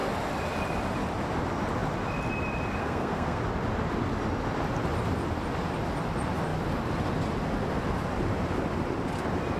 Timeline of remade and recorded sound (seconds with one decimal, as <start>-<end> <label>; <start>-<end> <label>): 0.0-2.8 recorded; 2.8-3.4 remade; 3.4-9.6 recorded